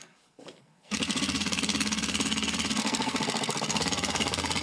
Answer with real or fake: fake